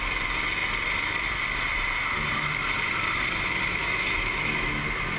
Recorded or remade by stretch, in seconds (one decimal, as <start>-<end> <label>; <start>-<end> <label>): 0.0-3.8 recorded; 3.8-4.8 remade; 4.8-5.2 recorded